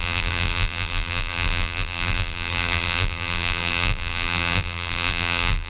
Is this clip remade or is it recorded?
remade